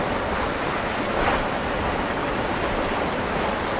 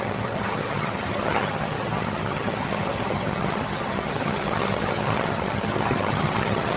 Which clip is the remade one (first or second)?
second